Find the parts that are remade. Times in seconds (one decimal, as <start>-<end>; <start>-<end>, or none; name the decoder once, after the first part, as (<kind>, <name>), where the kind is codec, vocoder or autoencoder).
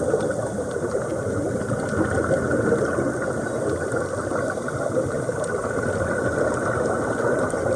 none